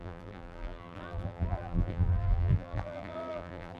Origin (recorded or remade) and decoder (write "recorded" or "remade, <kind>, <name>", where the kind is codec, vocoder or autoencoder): remade, vocoder, BigVGAN v2